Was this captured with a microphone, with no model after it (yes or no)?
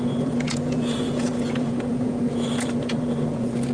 no